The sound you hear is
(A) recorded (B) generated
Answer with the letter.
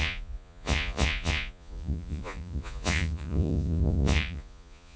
B